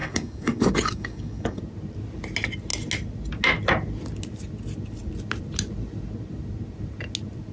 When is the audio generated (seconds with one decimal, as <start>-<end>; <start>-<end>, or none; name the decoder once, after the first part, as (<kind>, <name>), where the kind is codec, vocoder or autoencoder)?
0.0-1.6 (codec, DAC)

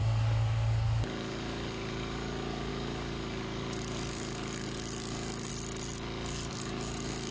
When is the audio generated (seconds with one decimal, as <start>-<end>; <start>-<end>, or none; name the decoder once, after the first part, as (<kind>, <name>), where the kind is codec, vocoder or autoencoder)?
0.0-5.5 (codec, DAC); 6.5-7.3

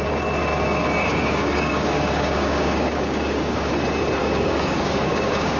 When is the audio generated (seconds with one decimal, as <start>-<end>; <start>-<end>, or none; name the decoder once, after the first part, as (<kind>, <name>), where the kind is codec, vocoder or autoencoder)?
1.0-3.7 (codec, DAC); 4.2-5.6

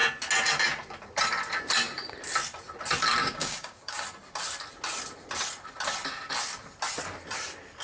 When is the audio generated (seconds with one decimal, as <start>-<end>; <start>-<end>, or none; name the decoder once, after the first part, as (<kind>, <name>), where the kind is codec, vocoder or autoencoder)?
3.2-4.0 (codec, DAC)